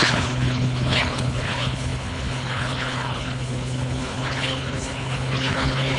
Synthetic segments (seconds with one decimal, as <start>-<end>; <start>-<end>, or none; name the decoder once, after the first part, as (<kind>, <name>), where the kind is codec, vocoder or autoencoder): 0.0-6.0 (codec, HILCodec)

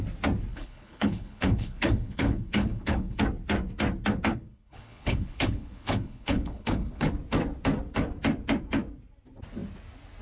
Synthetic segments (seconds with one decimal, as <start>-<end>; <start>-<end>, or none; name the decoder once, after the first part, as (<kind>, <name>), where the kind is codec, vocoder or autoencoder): 0.5-3.2 (codec, HILCodec); 4.3-7.1

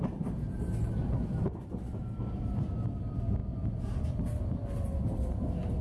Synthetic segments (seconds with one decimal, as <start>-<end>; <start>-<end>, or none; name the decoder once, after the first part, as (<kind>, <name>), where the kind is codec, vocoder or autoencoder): none

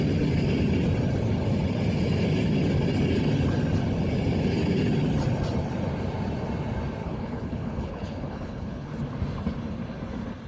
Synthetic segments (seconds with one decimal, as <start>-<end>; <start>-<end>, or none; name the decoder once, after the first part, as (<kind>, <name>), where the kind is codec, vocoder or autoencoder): 7.0-8.9 (codec, HILCodec)

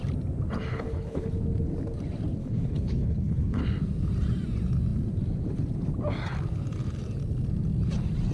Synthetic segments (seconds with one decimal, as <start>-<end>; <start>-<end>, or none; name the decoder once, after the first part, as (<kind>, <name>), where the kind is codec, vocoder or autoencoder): 0.7-1.3 (codec, HILCodec); 2.4-3.6

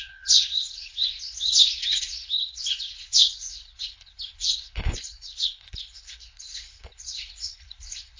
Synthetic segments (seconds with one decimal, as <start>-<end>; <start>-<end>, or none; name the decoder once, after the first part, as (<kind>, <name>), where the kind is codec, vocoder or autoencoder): 0.0-8.2 (codec, HILCodec)

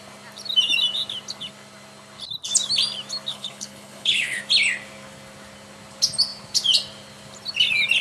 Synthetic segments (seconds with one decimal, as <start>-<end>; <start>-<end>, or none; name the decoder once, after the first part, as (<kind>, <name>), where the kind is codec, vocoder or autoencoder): 3.3-4.4 (codec, HILCodec)

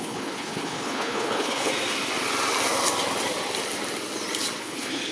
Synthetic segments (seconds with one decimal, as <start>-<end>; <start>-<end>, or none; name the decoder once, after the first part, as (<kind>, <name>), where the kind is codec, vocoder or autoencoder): 0.0-1.7 (codec, HILCodec); 4.6-5.1